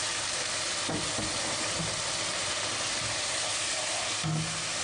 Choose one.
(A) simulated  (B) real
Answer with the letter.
B